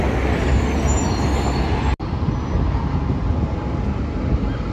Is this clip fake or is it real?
real